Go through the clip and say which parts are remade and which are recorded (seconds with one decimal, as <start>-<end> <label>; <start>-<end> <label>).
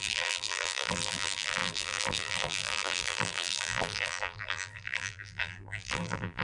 0.0-6.4 remade